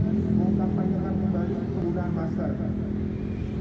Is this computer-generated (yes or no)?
no